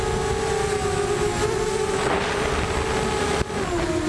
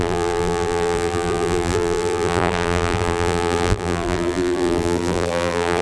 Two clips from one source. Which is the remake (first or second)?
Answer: second